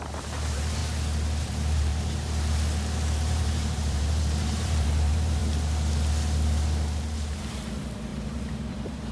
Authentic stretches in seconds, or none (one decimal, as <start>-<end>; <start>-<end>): 0.8-1.4; 1.9-3.3; 5.4-7.4